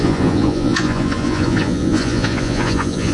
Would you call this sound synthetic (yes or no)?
yes